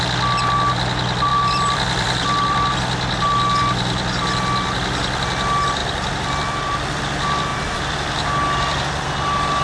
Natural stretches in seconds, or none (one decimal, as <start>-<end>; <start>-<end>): 0.0-1.3; 2.7-5.8; 7.0-7.5; 9.1-9.6